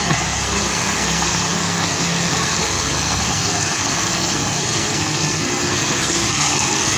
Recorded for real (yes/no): no